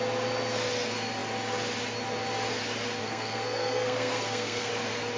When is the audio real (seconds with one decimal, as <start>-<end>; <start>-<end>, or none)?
0.0-3.0; 4.7-5.2